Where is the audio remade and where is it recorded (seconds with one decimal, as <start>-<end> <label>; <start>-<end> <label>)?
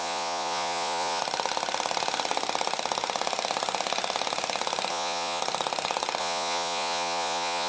0.0-1.2 remade; 1.2-4.9 recorded; 4.9-5.4 remade; 5.4-6.2 recorded; 6.2-7.7 remade